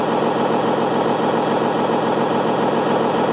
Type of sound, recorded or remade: recorded